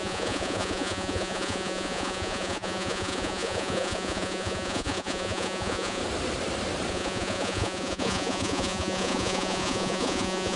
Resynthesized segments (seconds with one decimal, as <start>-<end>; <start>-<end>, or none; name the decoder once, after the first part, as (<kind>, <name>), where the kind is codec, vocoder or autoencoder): 0.0-6.0 (vocoder, Vocos); 6.9-10.6